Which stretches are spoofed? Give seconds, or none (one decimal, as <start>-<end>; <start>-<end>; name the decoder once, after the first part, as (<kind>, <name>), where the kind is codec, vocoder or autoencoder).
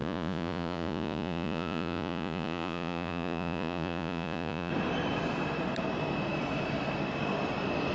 0.0-4.7 (vocoder, Vocos)